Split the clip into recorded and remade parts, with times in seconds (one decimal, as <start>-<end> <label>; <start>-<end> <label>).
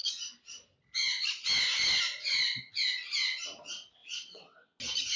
0.0-4.0 recorded; 4.0-4.8 remade; 4.8-5.2 recorded